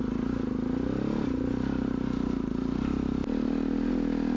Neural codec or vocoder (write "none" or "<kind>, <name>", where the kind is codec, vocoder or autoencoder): none